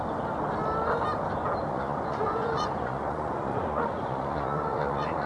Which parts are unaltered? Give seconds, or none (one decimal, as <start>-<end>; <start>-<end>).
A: 0.0-1.7